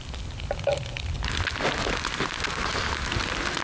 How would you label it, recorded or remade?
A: recorded